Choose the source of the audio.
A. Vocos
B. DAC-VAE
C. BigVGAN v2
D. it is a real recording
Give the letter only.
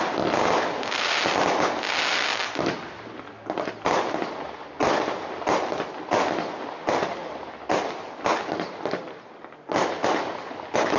D